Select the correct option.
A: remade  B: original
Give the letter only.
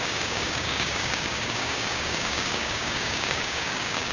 A